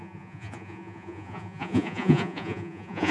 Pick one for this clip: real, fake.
fake